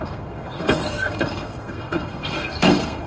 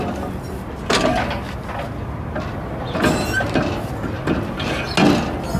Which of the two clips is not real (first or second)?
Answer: first